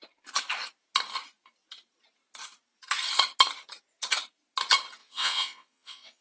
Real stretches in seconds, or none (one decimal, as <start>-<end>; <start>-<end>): 0.0-5.0